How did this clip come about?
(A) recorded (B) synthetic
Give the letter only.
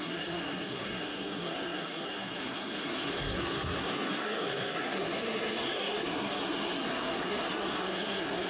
B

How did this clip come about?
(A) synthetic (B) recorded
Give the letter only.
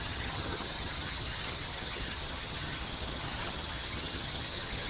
A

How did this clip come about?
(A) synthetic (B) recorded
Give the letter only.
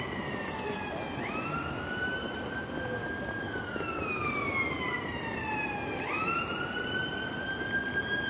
B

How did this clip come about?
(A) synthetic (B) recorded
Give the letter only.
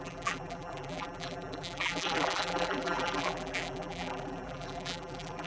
A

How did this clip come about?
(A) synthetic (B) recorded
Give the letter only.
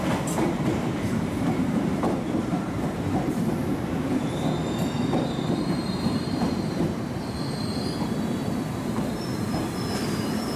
A